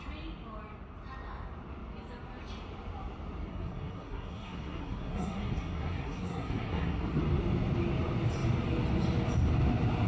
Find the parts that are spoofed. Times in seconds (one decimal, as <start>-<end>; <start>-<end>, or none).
3.5-7.2